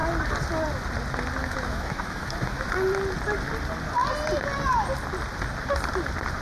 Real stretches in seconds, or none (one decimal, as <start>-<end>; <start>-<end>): 0.0-1.4; 2.7-6.4